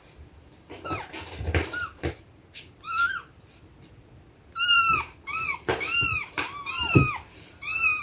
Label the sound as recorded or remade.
remade